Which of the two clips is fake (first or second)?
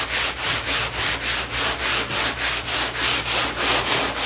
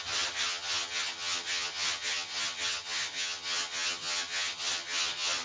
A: second